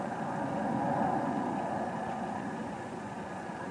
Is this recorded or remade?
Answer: remade